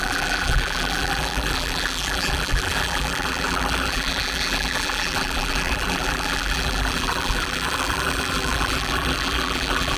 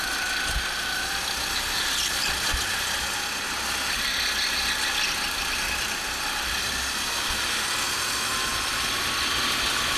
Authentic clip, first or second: second